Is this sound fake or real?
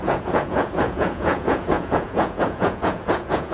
fake